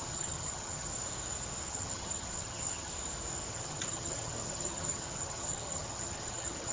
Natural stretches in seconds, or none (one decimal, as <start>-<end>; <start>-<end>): 0.9-1.7; 2.9-3.5